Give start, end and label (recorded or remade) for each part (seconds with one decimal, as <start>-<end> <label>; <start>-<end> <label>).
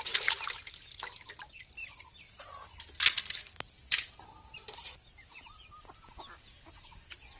0.0-1.8 recorded; 1.8-2.7 remade; 2.7-7.4 recorded